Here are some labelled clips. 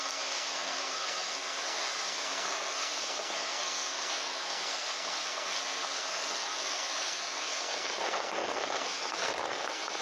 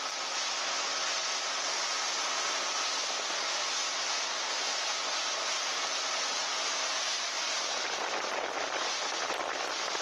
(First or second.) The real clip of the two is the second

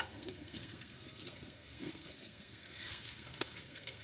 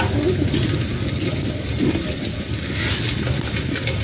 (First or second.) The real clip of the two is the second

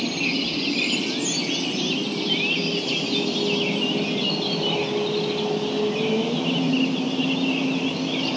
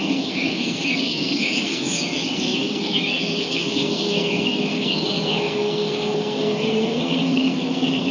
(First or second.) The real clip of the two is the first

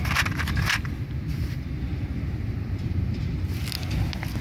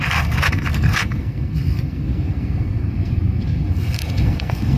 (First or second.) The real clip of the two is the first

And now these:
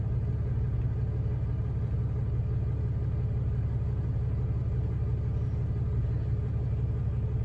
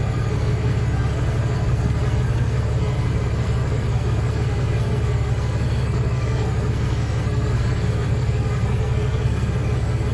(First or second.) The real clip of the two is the first